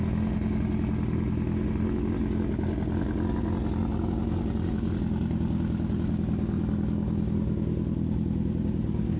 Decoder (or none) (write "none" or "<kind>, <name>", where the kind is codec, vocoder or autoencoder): none